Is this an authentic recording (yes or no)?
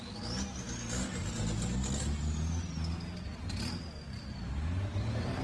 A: yes